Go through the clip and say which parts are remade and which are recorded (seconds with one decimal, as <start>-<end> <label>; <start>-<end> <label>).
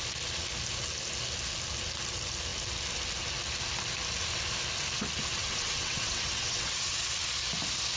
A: 0.0-5.4 recorded; 5.4-7.0 remade; 7.0-8.0 recorded